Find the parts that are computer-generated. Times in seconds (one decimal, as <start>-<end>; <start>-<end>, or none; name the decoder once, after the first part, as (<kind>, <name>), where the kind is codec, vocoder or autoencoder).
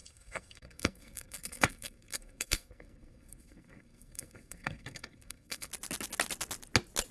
0.0-5.7 (codec, SNAC)